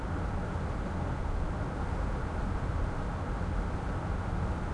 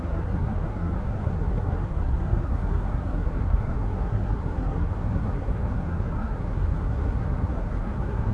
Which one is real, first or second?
first